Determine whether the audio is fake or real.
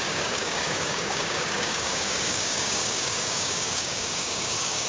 fake